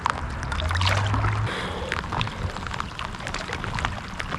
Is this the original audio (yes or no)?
yes